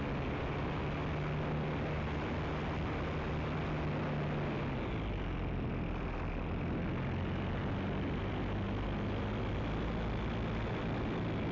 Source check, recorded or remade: recorded